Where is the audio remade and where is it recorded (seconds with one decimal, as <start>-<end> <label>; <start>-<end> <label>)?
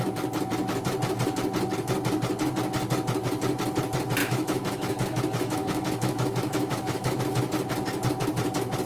0.0-4.2 recorded; 4.2-7.2 remade; 7.2-8.9 recorded